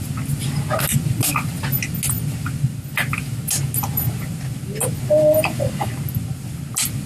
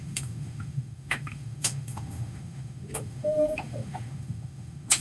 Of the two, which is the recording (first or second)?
first